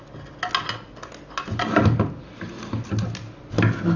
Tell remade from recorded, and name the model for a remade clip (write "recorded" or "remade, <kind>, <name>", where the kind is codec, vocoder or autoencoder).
recorded